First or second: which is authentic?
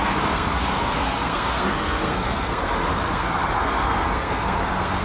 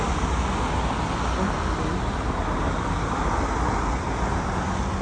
second